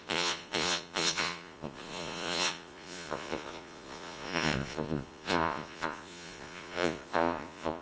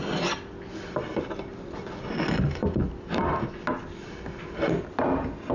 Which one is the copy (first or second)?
first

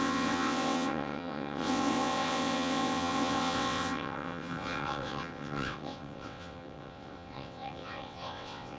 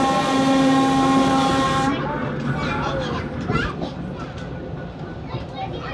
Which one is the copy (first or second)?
first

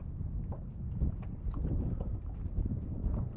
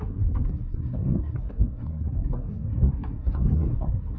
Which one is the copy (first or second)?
second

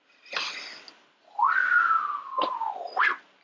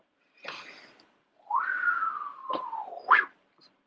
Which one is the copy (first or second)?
second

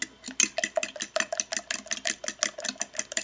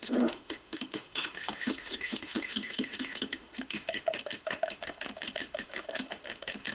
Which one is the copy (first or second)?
second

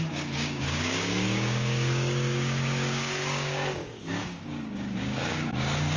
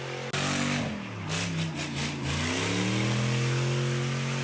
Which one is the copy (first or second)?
first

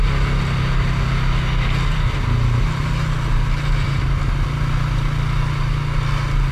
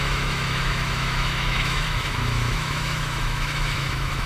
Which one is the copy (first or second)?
second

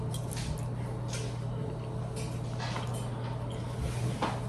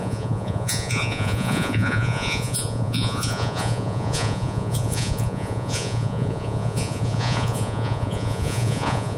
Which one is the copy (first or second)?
second